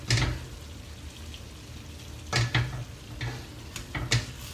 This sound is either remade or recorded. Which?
recorded